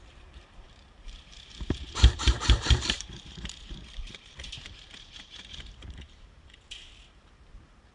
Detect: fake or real fake